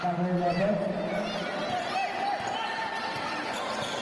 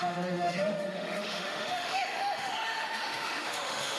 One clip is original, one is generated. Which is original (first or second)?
first